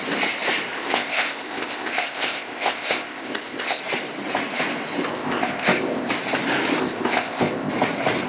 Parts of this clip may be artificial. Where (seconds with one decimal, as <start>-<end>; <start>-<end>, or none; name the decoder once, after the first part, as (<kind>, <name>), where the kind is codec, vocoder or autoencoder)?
0.7-3.8 (codec, ZipCodec); 5.1-6.1; 6.8-7.7